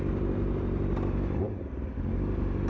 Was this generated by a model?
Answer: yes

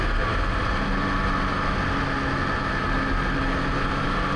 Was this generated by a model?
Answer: no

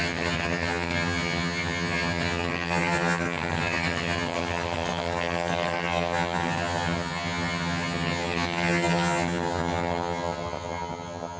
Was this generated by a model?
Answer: yes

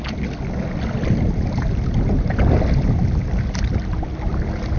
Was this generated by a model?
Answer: no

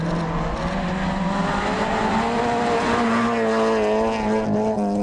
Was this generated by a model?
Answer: no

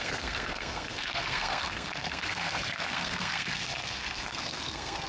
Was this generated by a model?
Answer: yes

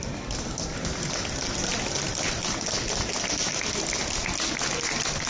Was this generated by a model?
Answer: no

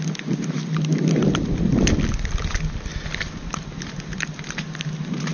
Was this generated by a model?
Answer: no